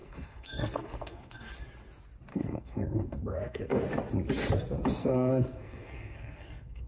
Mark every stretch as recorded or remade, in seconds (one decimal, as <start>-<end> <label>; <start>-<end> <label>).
0.0-1.5 remade; 1.5-2.3 recorded; 2.3-3.8 remade; 3.8-5.0 recorded; 5.0-6.9 remade